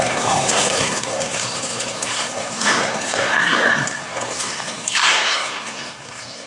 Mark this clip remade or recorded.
remade